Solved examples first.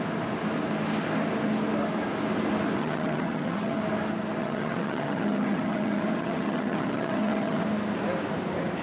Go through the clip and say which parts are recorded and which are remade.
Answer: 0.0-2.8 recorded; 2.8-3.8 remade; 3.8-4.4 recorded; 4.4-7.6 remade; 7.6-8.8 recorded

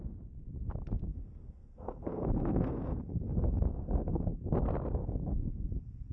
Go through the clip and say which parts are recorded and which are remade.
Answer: 0.0-1.1 recorded; 1.1-4.3 remade; 4.3-5.0 recorded; 5.0-6.1 remade